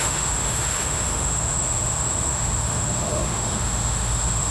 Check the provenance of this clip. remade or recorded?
remade